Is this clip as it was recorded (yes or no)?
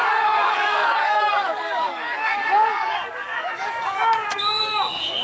no